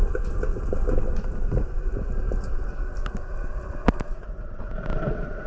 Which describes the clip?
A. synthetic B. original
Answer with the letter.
B